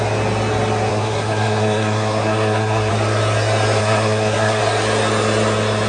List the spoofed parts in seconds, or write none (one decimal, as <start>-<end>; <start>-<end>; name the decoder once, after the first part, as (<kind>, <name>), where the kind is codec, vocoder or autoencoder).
0.9-2.9 (codec, SNAC); 3.8-4.6